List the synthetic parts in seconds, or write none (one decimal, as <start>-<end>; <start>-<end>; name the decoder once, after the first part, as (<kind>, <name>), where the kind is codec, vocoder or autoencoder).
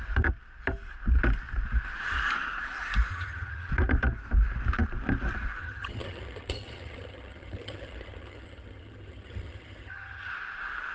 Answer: 3.1-3.7 (vocoder, HiFi-GAN); 5.6-10.3